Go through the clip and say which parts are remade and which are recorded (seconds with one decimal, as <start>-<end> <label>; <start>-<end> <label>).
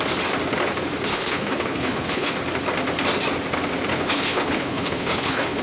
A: 0.0-1.1 recorded; 1.1-2.3 remade; 2.3-3.9 recorded; 3.9-5.6 remade